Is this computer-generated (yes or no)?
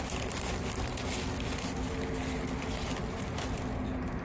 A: no